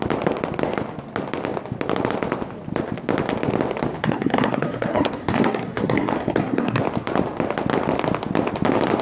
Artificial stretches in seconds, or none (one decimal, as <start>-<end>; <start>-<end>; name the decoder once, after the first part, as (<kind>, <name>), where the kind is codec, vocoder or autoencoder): 4.0-6.8 (codec, SNAC)

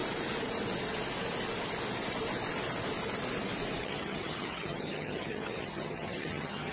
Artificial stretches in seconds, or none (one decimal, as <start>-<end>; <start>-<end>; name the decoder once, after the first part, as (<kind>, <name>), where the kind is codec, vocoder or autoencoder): 3.8-6.7 (vocoder, HiFi-GAN)